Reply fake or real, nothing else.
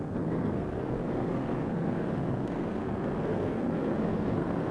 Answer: fake